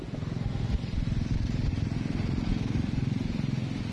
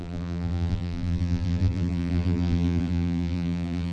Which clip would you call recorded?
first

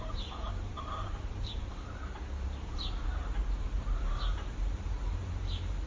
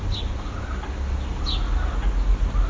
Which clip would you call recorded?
second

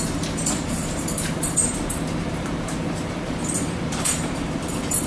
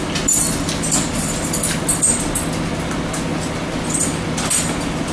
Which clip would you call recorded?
second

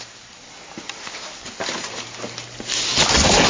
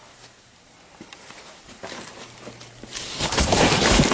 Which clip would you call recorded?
first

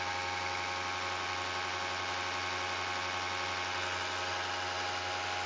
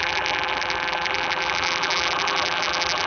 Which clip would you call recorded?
first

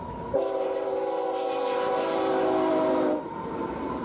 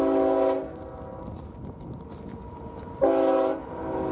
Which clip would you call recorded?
second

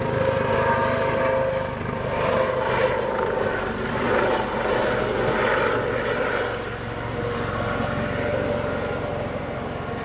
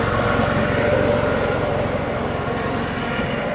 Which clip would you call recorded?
first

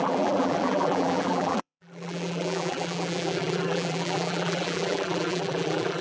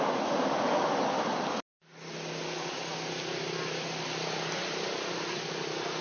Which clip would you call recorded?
second